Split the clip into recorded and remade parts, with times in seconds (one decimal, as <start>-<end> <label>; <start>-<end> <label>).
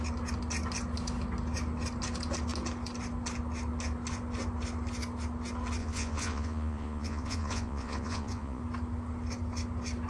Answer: 0.0-5.8 recorded; 5.8-8.6 remade; 8.6-10.1 recorded